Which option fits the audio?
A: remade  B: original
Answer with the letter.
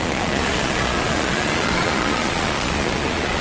A